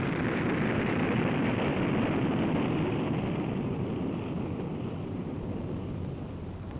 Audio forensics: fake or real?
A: fake